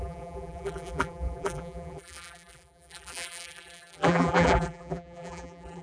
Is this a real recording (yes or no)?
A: no